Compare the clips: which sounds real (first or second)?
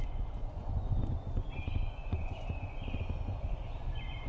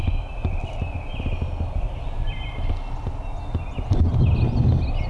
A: second